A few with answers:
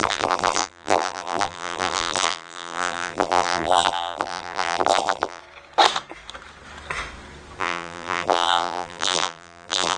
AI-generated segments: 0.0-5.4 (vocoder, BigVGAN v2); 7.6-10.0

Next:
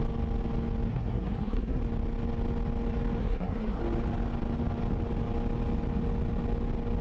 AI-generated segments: 0.9-1.8 (codec, SNAC); 3.2-3.8

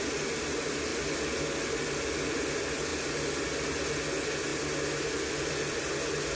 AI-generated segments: none

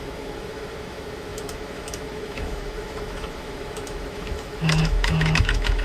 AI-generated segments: 0.0-5.8 (autoencoder, DAC-VAE)

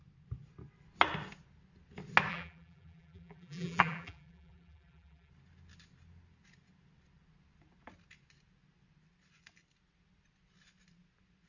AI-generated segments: 2.3-5.3 (vocoder, BigVGAN v2)

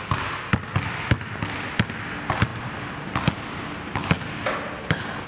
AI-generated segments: 2.5-5.3 (vocoder, BigVGAN v2)

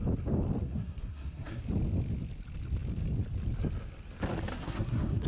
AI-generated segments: 0.6-1.6 (codec, SNAC); 4.5-5.3